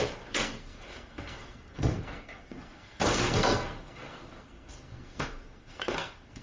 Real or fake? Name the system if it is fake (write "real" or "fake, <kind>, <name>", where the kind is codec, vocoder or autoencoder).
fake, codec, SNAC